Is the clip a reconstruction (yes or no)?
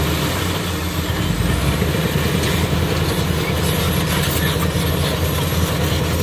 no